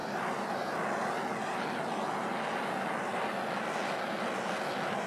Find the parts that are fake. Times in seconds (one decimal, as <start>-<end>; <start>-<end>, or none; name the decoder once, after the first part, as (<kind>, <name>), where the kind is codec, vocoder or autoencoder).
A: 0.0-1.0 (vocoder, BigVGAN v2)